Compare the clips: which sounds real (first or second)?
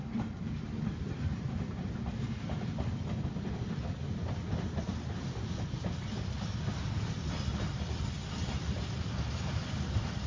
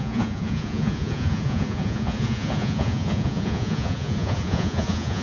first